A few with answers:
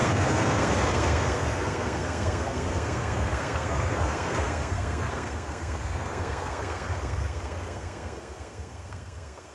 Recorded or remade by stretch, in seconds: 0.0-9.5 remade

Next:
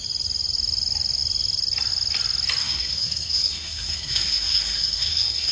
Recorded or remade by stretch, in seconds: 0.0-2.6 recorded; 2.6-5.5 remade

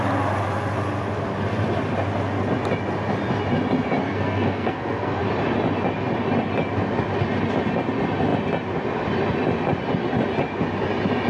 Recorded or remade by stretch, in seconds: 0.0-4.0 recorded; 4.0-5.2 remade; 5.2-11.3 recorded

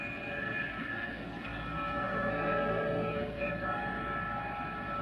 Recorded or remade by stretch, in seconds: 0.0-0.8 recorded; 0.8-3.8 remade; 3.8-5.0 recorded

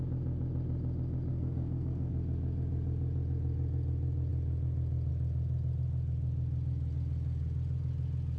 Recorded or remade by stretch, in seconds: 0.0-1.3 recorded; 1.3-2.1 remade; 2.1-8.4 recorded

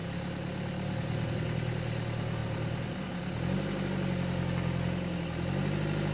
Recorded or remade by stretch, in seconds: 0.0-6.1 recorded

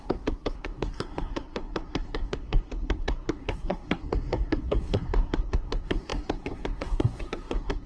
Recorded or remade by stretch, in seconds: 0.0-7.9 remade

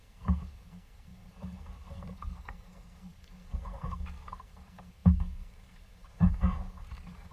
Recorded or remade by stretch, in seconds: 0.0-7.3 remade